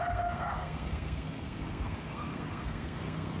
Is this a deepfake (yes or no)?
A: yes